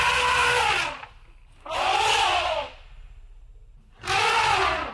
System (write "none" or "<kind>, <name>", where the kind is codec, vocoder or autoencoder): none